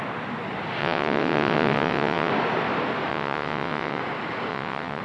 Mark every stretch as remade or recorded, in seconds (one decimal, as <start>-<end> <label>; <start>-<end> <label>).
0.0-0.8 recorded; 0.8-2.3 remade; 2.3-3.1 recorded; 3.1-4.0 remade; 4.0-4.5 recorded; 4.5-5.0 remade

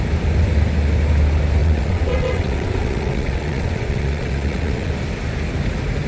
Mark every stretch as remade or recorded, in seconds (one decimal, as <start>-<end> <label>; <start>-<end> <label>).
0.0-1.6 recorded; 1.6-4.9 remade; 4.9-6.1 recorded

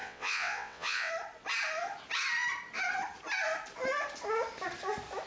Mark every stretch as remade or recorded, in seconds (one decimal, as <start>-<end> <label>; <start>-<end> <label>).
0.0-1.1 remade; 1.1-5.3 recorded

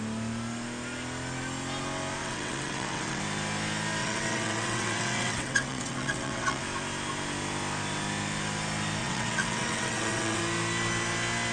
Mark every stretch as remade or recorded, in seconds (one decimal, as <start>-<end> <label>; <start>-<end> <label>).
0.0-2.2 recorded; 2.2-3.2 remade; 3.2-4.0 recorded; 4.0-6.6 remade; 6.6-9.0 recorded; 9.0-10.4 remade; 10.4-11.5 recorded

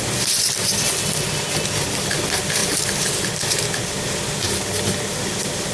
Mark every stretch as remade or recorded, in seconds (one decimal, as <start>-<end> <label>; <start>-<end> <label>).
0.0-5.7 recorded

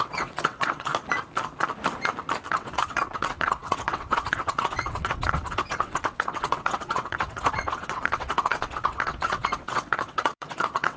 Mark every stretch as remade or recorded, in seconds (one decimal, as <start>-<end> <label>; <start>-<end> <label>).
0.0-0.9 remade; 0.9-2.5 recorded; 2.5-11.0 remade

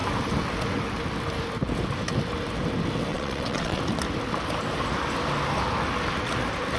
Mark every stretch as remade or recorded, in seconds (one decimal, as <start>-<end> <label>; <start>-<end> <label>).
0.0-3.1 recorded; 3.1-3.8 remade; 3.8-6.8 recorded

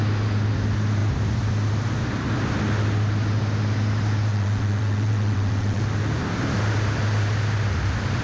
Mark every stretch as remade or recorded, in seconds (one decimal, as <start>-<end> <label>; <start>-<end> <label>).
0.0-4.3 recorded; 4.3-5.8 remade; 5.8-8.2 recorded